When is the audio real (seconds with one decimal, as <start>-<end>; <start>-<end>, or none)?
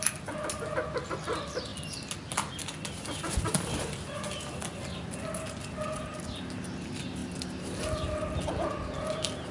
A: 0.0-9.5